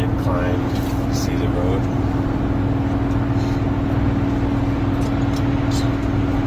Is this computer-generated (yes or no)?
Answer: no